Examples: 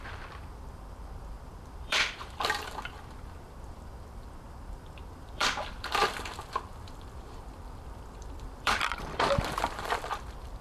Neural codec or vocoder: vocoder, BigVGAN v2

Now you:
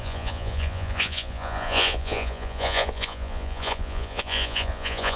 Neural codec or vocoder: vocoder, Vocos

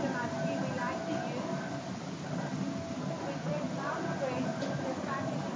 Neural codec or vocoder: none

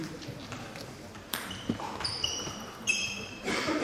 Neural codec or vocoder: vocoder, BigVGAN v2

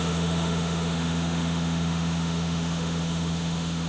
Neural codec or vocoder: autoencoder, DAC-VAE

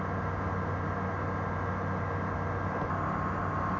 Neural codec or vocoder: none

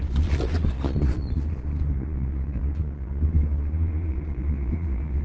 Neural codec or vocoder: vocoder, Vocos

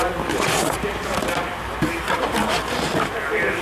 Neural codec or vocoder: none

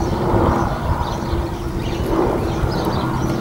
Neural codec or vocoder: none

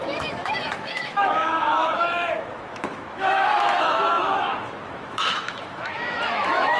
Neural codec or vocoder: autoencoder, DAC-VAE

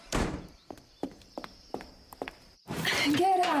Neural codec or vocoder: vocoder, BigVGAN v2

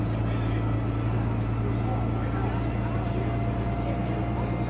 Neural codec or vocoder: none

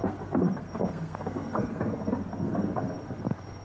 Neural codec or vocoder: codec, SNAC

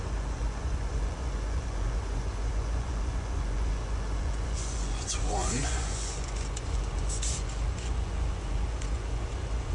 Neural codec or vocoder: vocoder, Vocos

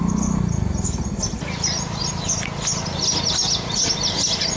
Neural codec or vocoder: none